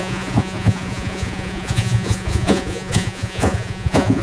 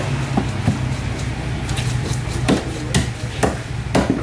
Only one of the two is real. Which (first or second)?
second